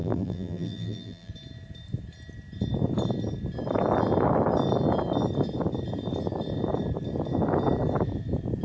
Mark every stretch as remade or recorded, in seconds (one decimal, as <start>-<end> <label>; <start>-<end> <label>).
0.0-1.3 remade; 1.3-8.6 recorded